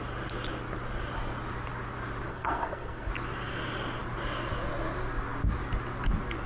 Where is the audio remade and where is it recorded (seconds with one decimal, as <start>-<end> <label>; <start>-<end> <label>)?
0.0-2.3 recorded; 2.3-3.1 remade; 3.1-6.5 recorded